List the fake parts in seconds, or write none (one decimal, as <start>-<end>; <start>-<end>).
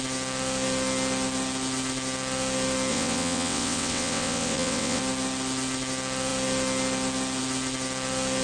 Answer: 2.9-5.0